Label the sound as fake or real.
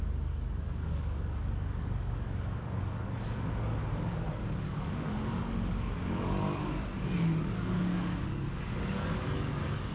fake